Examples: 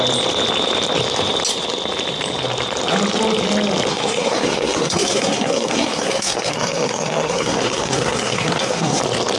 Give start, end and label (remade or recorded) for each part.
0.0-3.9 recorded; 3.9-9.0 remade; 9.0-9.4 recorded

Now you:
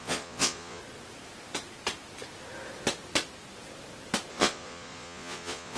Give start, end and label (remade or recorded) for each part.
0.0-0.8 remade; 0.8-4.3 recorded; 4.3-5.8 remade

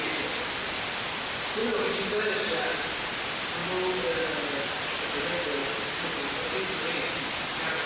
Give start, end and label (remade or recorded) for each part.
0.0-1.6 recorded; 1.6-3.1 remade; 3.1-7.9 recorded

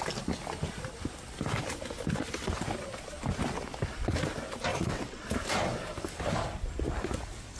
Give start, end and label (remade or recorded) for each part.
0.0-4.7 recorded; 4.7-5.3 remade; 5.3-7.6 recorded